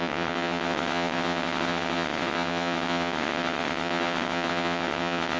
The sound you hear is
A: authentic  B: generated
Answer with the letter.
B